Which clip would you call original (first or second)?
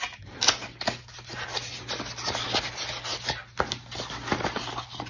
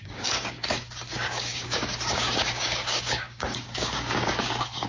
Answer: first